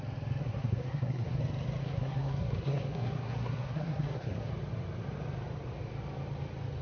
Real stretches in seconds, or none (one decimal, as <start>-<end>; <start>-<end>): 0.0-0.4; 1.4-1.8; 4.5-6.8